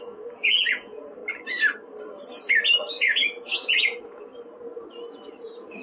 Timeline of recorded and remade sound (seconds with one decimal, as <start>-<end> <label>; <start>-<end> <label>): 0.0-1.2 remade; 1.2-2.9 recorded; 2.9-4.3 remade; 4.3-5.1 recorded; 5.1-5.8 remade